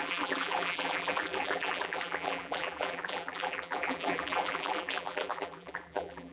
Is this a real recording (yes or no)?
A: no